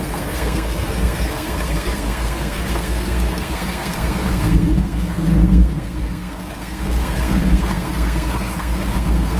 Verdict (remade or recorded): remade